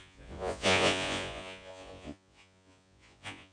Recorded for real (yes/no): no